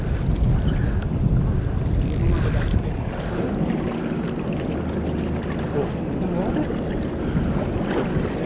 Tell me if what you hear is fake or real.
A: real